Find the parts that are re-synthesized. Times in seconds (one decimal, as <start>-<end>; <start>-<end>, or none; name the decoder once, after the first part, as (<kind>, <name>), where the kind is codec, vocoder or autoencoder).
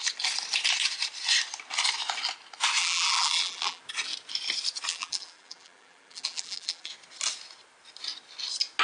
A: 2.8-3.8 (vocoder, BigVGAN v2); 4.9-6.9